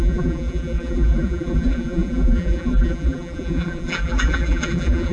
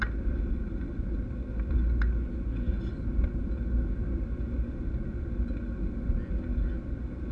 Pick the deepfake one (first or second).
first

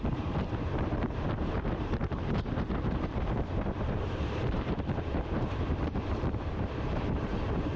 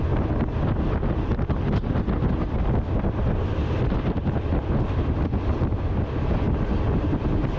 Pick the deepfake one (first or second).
first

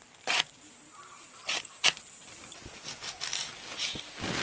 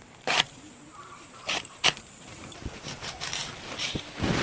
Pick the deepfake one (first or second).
second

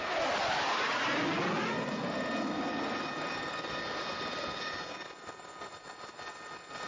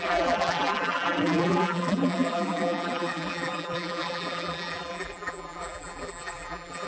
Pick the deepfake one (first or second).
second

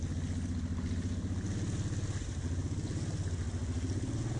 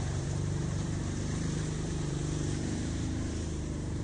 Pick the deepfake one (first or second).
second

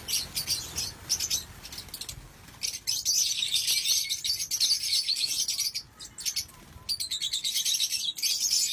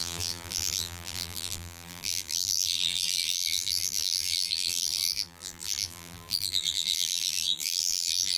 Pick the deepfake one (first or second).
second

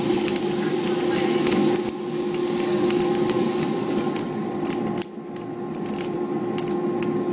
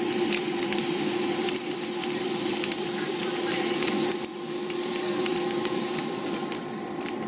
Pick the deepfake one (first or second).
second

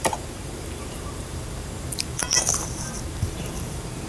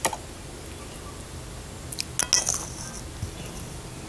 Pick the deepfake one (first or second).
first